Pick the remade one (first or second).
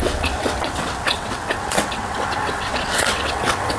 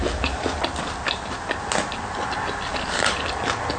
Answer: first